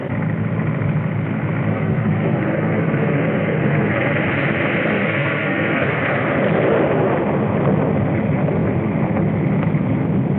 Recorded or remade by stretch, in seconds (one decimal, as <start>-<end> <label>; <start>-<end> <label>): 0.0-1.7 recorded; 1.7-4.2 remade; 4.2-5.0 recorded; 5.0-6.0 remade; 6.0-10.4 recorded

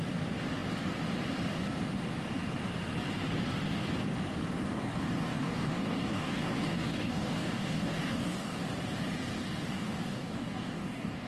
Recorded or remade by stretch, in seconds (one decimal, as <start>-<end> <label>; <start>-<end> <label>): 0.0-4.7 recorded; 4.7-8.6 remade; 8.6-9.4 recorded; 9.4-11.3 remade

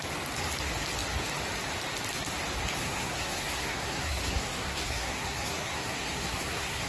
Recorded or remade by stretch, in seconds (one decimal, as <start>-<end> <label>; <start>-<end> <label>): 0.0-2.8 recorded; 2.8-6.9 remade

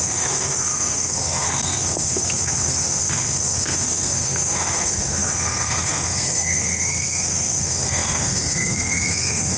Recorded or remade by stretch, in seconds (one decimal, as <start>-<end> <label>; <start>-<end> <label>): 0.0-9.6 remade

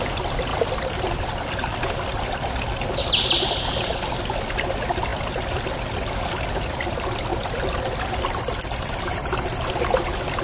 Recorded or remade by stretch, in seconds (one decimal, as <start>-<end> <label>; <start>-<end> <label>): 0.0-10.4 recorded

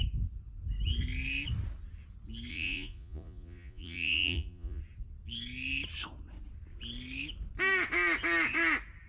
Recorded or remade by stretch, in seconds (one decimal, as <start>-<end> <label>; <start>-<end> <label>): 0.0-2.5 recorded; 2.5-4.8 remade; 4.8-9.1 recorded